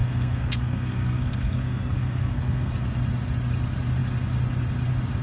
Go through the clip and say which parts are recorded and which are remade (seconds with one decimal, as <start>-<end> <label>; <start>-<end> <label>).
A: 0.0-2.7 remade; 2.7-5.2 recorded